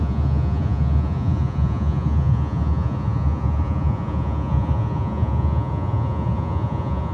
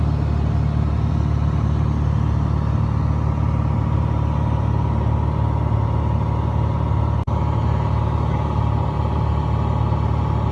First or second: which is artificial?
first